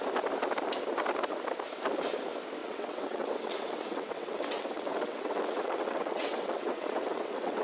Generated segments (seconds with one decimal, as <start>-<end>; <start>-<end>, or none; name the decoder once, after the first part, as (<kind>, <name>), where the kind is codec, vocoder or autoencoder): 2.6-7.6 (vocoder, WaveNeXt)